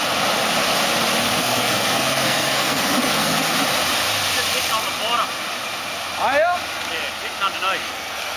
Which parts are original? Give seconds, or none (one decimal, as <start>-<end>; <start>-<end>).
0.0-1.4; 3.5-7.8